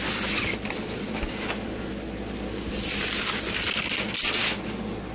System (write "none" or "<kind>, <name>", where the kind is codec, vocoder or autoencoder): none